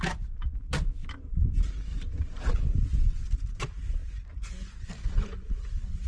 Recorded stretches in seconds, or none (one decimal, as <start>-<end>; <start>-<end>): 0.0-1.9; 2.5-6.1